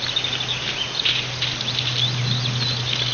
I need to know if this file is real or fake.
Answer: real